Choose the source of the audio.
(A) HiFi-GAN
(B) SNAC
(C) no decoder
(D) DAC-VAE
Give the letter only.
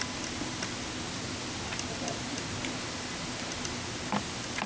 C